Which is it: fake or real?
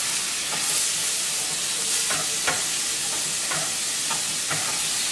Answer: real